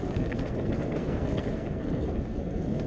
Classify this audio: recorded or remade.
remade